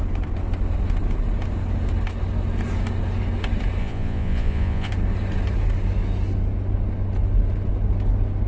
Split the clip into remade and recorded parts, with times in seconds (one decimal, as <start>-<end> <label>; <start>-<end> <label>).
0.0-3.8 recorded; 3.8-4.9 remade; 4.9-8.5 recorded